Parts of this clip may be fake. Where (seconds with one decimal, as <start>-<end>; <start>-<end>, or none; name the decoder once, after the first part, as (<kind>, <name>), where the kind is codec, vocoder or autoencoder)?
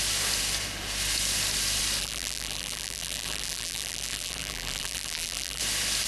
2.0-5.6 (vocoder, BigVGAN v2)